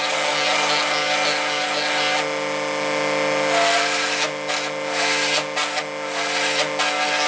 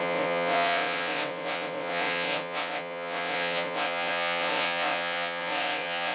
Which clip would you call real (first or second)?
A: first